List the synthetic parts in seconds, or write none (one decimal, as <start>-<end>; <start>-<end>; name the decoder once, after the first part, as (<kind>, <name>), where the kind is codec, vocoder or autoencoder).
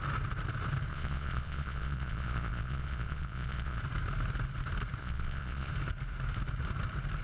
0.9-3.8 (vocoder, Vocos); 5.0-5.7